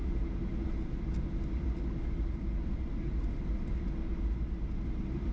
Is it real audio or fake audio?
real